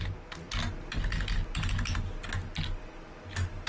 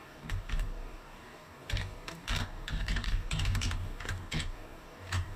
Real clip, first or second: first